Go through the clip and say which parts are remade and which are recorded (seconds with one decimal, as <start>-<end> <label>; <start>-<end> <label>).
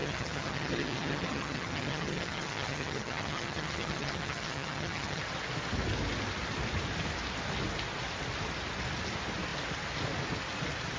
0.0-5.2 remade; 5.2-11.0 recorded